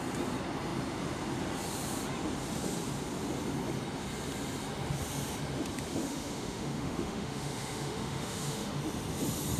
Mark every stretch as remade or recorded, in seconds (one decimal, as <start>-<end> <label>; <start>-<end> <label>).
0.0-6.0 recorded; 6.0-8.8 remade; 8.8-9.6 recorded